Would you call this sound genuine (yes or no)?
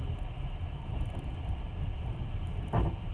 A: yes